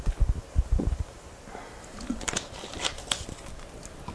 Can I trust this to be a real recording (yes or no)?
no